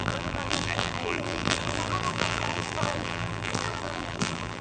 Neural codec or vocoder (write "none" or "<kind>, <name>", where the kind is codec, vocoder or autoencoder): vocoder, BigVGAN v2